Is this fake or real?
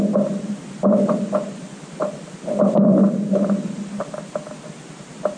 real